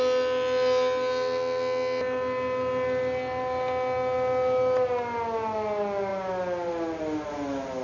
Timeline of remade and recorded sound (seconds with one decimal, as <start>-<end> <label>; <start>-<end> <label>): 0.0-7.8 recorded